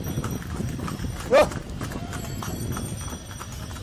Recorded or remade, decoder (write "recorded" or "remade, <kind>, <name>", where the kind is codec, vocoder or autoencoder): recorded